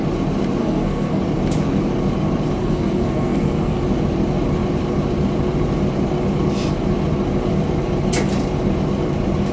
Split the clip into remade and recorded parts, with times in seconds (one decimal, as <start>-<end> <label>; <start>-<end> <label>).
0.0-0.6 recorded; 0.6-1.2 remade; 1.2-2.6 recorded; 2.6-3.8 remade; 3.8-9.5 recorded

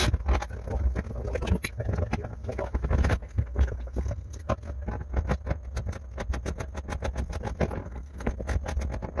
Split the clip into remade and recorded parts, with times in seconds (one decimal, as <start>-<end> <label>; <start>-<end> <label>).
0.0-3.1 recorded; 3.1-4.5 remade; 4.5-7.8 recorded; 7.8-8.3 remade; 8.3-9.2 recorded

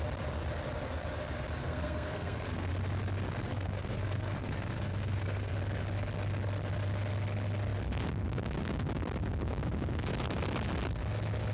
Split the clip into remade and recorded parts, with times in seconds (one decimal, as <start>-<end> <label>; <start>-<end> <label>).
0.0-1.6 recorded; 1.6-2.7 remade; 2.7-3.5 recorded; 3.5-5.5 remade; 5.5-11.5 recorded

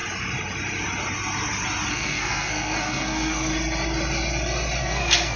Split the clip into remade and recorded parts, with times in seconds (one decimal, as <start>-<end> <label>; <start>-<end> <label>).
0.0-1.9 recorded; 1.9-3.5 remade; 3.5-4.8 recorded; 4.8-5.4 remade

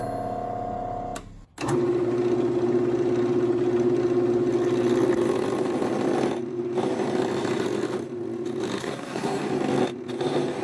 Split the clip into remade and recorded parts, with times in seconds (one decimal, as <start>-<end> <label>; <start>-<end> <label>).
0.0-8.8 recorded; 8.8-9.4 remade; 9.4-10.6 recorded

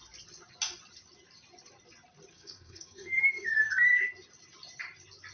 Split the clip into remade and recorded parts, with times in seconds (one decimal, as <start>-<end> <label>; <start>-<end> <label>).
0.0-2.3 recorded; 2.3-4.1 remade; 4.1-5.3 recorded